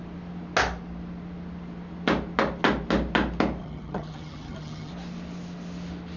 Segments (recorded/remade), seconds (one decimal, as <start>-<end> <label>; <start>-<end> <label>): 0.0-3.6 recorded; 3.6-4.9 remade; 4.9-6.2 recorded